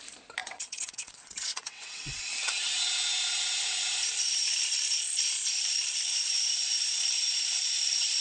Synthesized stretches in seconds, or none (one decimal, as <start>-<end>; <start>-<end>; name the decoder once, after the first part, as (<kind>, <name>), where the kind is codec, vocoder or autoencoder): 0.4-2.3 (vocoder, WaveNeXt)

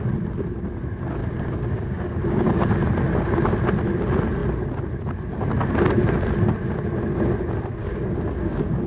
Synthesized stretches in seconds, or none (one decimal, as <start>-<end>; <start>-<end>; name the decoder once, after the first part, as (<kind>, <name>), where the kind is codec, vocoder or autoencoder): 1.2-2.7 (codec, DAC); 7.8-8.9

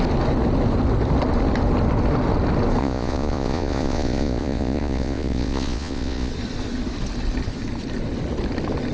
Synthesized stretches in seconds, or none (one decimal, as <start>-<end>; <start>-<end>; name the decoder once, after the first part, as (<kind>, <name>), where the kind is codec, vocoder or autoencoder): 2.8-6.3 (vocoder, Vocos)

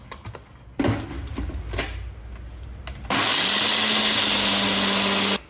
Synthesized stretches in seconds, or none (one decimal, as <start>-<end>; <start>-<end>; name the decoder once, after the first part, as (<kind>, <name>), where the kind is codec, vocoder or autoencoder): 1.1-1.8 (vocoder, BigVGAN v2)

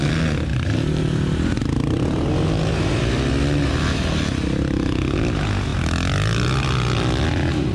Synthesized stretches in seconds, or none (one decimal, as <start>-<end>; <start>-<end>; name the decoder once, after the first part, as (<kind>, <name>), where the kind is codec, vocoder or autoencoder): 0.5-2.3 (vocoder, BigVGAN v2)

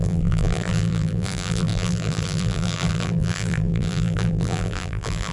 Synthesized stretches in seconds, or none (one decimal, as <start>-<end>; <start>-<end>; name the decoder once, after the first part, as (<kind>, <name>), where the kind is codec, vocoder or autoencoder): 0.0-5.3 (vocoder, BigVGAN v2)

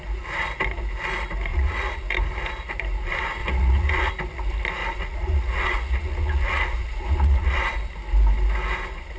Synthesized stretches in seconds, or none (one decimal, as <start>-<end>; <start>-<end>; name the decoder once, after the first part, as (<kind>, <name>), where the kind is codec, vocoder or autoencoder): 1.5-2.0 (vocoder, Vocos); 3.4-4.1; 4.8-7.6

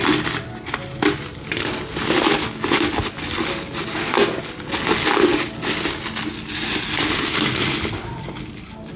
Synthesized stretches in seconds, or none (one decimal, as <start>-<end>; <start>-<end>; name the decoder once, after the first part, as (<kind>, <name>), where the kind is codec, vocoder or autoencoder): none